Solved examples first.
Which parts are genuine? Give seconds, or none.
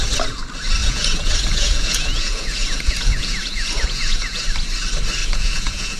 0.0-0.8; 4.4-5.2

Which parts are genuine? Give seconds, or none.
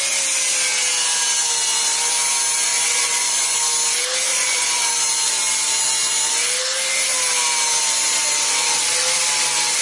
0.0-2.7; 3.6-4.3; 4.9-9.8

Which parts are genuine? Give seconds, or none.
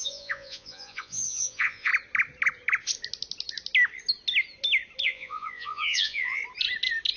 1.9-5.0; 6.4-7.2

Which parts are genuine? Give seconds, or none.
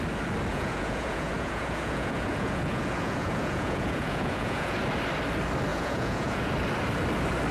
0.0-0.5; 4.8-5.7; 6.5-7.5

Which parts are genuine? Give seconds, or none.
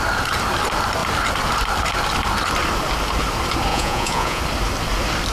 0.0-3.7; 4.4-5.3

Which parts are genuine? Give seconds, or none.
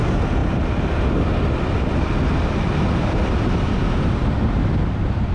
0.0-5.3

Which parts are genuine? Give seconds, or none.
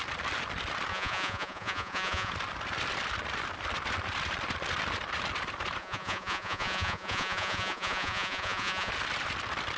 0.0-0.9; 2.3-5.8; 8.9-9.8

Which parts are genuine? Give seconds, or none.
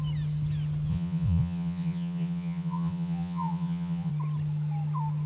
0.0-0.9; 4.1-5.3